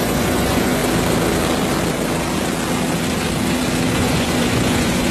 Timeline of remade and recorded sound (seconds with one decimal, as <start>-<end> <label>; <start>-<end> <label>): 0.0-0.8 remade; 0.8-3.9 recorded; 3.9-5.1 remade